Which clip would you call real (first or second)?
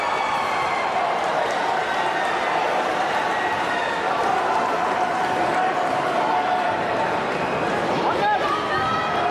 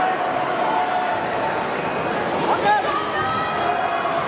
second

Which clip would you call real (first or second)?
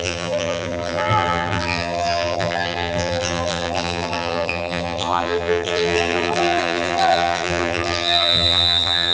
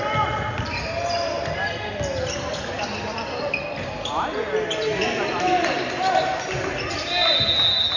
second